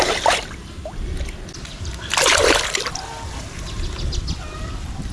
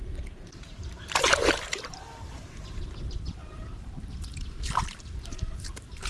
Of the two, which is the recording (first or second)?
first